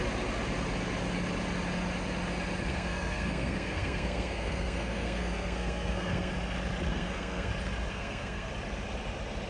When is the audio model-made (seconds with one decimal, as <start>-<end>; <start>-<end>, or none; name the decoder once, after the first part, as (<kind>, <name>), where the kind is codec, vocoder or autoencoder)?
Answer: 2.7-6.3 (codec, SNAC); 6.9-7.5; 7.9-8.5